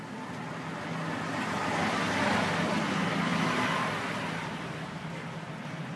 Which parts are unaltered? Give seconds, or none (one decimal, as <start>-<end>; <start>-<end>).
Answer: 0.0-6.0